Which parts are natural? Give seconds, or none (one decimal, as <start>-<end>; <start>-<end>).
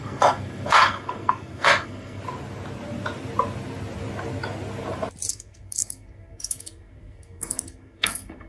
2.2-5.3